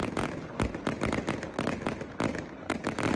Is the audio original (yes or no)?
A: yes